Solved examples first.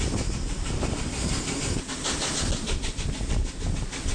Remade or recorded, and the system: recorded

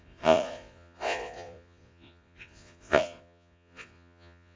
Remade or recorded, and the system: remade, vocoder, Vocos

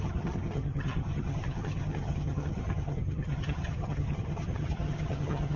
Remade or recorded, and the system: remade, vocoder, HiFi-GAN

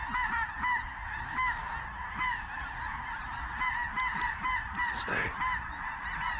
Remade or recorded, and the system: recorded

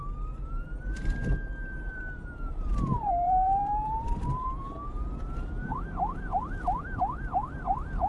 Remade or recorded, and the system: remade, vocoder, BigVGAN v2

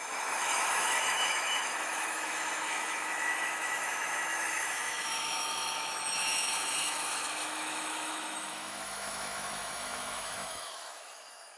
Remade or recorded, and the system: remade, autoencoder, DAC-VAE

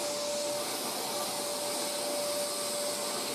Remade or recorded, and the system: recorded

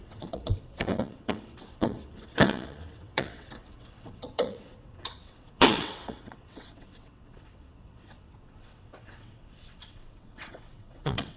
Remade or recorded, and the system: remade, vocoder, WaveNeXt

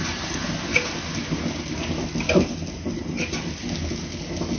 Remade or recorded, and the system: recorded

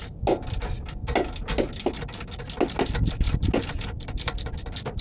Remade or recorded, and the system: recorded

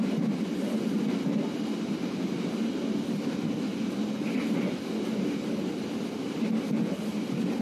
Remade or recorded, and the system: recorded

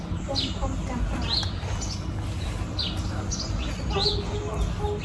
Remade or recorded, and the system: recorded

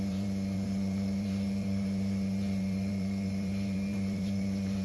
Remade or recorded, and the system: remade, vocoder, BigVGAN v2